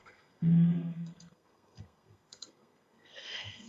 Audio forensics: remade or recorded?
remade